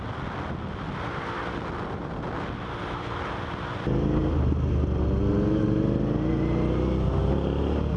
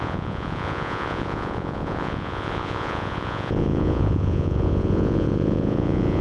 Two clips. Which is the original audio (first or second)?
first